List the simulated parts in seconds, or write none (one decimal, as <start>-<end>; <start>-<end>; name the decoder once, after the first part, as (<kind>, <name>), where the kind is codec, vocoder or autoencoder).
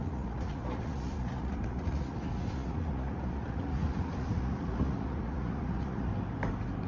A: 0.0-6.1 (vocoder, Vocos)